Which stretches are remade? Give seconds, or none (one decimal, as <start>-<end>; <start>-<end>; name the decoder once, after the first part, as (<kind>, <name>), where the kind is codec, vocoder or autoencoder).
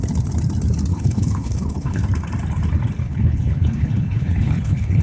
0.9-2.0 (codec, HILCodec); 3.0-5.0